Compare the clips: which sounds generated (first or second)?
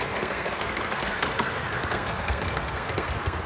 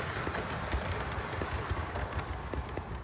first